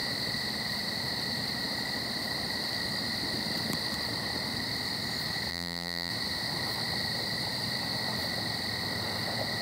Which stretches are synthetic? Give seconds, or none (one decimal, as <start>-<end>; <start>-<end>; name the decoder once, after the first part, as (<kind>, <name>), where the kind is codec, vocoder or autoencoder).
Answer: 5.5-6.1 (vocoder, BigVGAN v2)